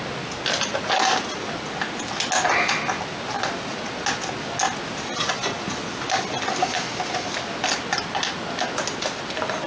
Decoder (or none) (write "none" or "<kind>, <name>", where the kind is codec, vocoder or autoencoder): none